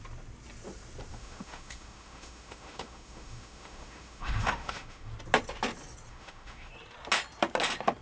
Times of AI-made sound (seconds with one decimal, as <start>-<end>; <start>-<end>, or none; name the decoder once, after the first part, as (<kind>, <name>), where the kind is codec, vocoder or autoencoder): 1.1-5.1 (autoencoder, DAC-VAE); 6.1-6.7